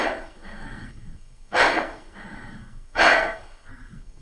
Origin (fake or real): fake